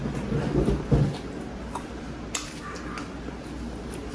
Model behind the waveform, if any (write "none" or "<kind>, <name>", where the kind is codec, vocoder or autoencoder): none